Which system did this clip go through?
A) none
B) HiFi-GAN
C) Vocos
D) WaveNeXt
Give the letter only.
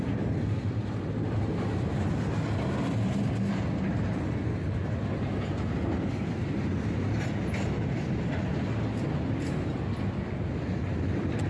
A